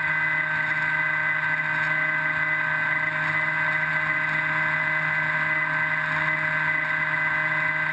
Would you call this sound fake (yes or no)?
no